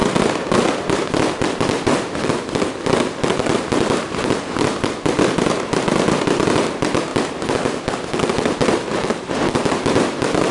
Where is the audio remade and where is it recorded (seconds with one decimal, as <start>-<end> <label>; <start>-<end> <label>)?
0.0-10.5 recorded